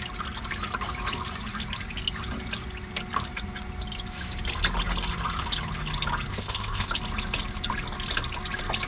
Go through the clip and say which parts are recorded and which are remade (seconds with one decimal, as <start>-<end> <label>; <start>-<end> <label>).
0.0-6.3 recorded; 6.3-6.9 remade; 6.9-8.9 recorded